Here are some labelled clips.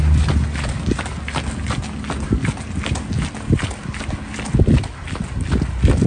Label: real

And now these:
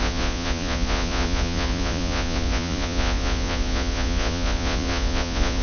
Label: fake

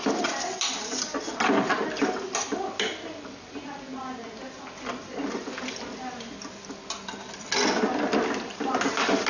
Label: real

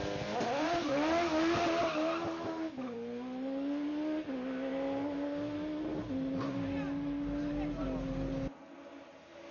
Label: real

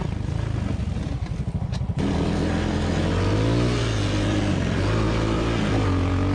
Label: real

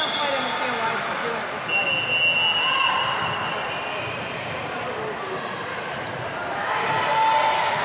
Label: real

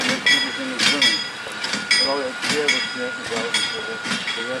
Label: real